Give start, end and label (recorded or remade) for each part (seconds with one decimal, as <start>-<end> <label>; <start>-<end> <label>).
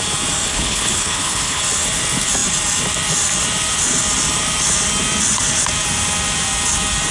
0.0-0.5 recorded; 0.5-1.6 remade; 1.6-7.1 recorded